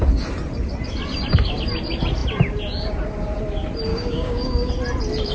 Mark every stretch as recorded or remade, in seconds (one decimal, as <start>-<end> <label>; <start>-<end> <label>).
0.0-3.9 recorded; 3.9-4.7 remade; 4.7-5.3 recorded